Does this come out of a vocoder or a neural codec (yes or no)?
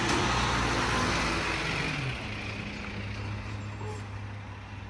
no